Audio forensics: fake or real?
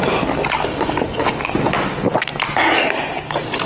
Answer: real